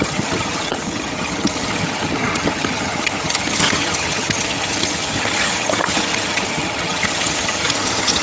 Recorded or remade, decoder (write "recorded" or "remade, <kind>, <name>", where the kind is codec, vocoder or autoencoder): remade, vocoder, HiFi-GAN